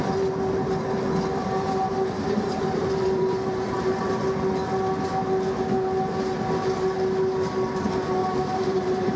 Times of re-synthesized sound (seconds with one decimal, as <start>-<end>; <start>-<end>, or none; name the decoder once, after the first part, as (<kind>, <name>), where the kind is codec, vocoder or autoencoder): 1.3-4.1 (vocoder, BigVGAN v2); 8.2-9.2